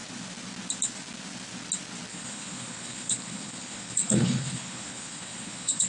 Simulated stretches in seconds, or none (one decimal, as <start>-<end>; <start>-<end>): 2.1-5.9